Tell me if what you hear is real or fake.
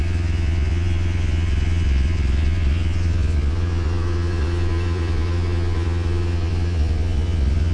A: fake